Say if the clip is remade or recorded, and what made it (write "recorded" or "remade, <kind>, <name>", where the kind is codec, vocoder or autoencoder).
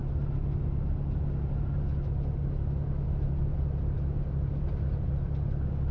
recorded